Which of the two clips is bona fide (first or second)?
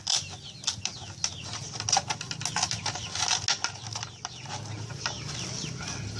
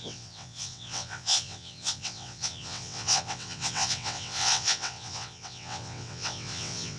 first